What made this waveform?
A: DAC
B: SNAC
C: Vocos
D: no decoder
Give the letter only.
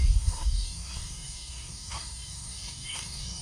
A